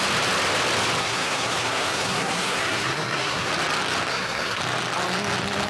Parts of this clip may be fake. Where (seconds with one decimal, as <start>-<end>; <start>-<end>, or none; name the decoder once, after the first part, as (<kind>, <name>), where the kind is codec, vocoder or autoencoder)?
1.0-3.5 (codec, SNAC); 4.1-4.6